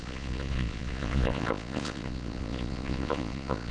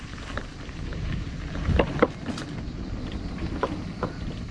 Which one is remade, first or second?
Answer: first